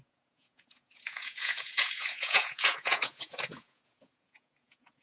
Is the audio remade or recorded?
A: remade